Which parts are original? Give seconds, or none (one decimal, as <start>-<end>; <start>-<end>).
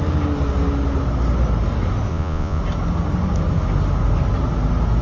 0.0-2.1; 2.6-5.0